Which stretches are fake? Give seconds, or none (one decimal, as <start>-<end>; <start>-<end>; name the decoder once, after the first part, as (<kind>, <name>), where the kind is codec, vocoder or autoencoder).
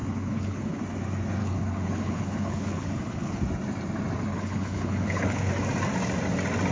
0.0-0.8 (codec, HILCodec); 1.4-3.4; 4.3-5.5